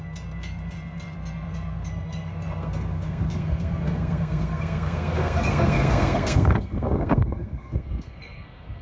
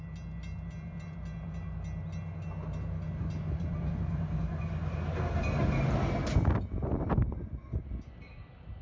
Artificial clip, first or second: first